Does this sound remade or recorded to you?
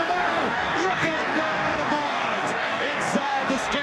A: remade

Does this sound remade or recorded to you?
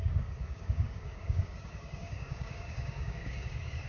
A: remade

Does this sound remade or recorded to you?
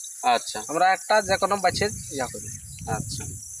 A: recorded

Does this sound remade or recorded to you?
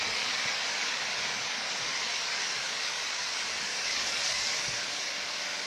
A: remade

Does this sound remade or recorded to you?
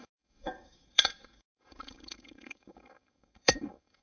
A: remade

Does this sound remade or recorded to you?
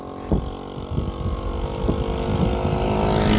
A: recorded